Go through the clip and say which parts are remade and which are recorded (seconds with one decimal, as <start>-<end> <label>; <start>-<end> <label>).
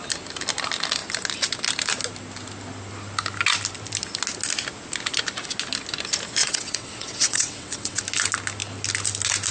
0.0-6.4 recorded; 6.4-8.0 remade; 8.0-9.5 recorded